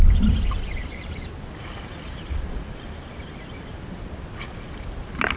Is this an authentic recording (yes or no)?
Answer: yes